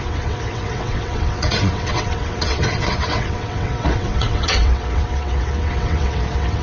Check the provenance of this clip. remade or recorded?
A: remade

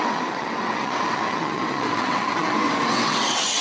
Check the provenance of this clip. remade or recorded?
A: remade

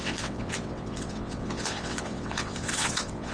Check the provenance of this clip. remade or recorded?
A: remade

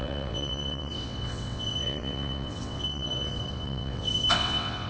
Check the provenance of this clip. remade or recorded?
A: remade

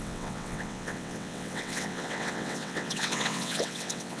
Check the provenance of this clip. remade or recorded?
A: remade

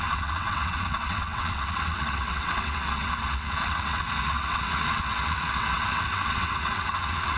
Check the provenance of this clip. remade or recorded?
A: remade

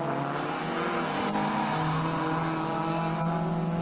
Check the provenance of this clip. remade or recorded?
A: recorded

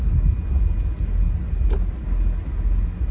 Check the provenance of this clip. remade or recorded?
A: recorded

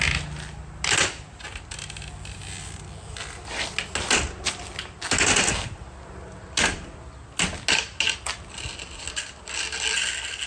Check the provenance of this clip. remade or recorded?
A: recorded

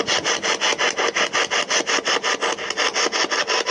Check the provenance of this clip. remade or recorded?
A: recorded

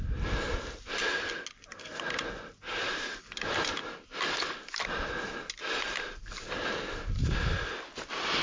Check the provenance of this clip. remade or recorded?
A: recorded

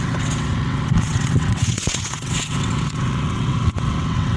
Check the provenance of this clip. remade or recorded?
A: remade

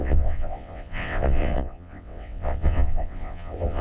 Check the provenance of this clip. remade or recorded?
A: remade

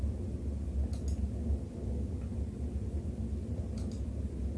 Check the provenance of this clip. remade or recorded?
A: recorded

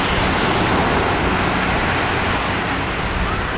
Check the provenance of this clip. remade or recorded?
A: recorded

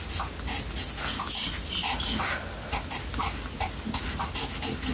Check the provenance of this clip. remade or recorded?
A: recorded